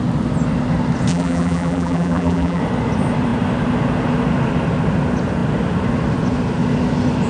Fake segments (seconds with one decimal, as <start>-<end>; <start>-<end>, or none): 1.1-2.6